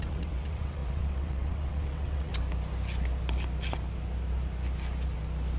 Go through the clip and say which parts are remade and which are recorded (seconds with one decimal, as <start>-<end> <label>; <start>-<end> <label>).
0.0-2.3 remade; 2.3-5.6 recorded